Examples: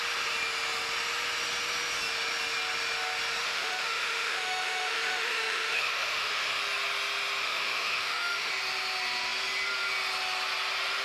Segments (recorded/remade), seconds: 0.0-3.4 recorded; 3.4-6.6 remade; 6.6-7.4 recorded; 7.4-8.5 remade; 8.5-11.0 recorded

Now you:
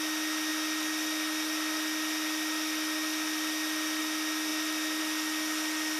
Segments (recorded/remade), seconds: 0.0-6.0 recorded